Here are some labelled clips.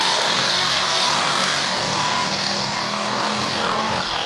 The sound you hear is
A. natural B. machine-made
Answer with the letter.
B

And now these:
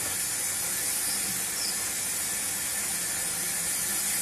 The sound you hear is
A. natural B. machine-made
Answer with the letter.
A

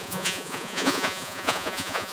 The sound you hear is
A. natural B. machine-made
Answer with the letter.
B